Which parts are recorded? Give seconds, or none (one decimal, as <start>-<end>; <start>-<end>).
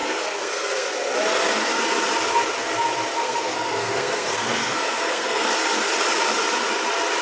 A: 0.9-3.2; 5.5-7.2